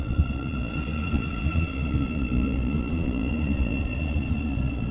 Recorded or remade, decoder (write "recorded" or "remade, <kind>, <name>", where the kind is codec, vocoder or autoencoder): remade, vocoder, Vocos